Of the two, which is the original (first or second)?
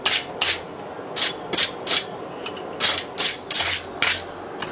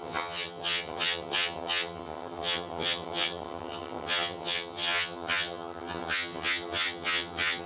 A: first